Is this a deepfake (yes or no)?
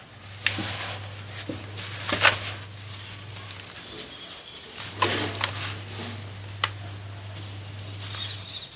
no